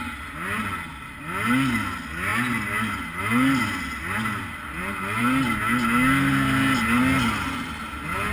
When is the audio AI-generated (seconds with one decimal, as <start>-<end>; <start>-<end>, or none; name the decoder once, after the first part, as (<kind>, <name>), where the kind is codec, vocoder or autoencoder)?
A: none